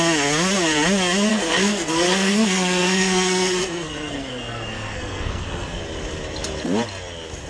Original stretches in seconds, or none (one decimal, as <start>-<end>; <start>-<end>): 0.0-1.3; 5.8-7.5